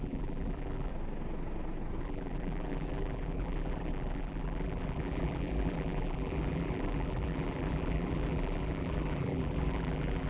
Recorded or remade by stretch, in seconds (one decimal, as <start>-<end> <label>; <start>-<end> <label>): 0.0-0.9 remade; 0.9-2.0 recorded; 2.0-10.3 remade